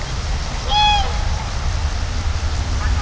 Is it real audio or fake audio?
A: real